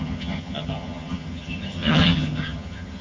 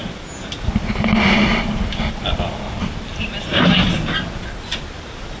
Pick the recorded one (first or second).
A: second